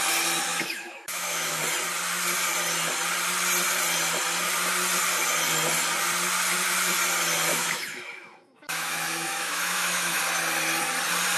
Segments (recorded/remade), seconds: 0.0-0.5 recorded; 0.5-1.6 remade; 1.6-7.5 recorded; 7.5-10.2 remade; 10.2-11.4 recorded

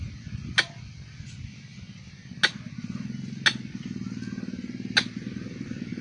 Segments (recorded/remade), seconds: 0.0-6.0 recorded

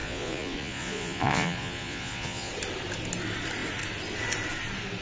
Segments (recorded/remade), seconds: 0.0-2.5 remade; 2.5-5.0 recorded